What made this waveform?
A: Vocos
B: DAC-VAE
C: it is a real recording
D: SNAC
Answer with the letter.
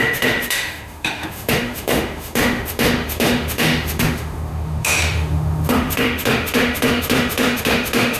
B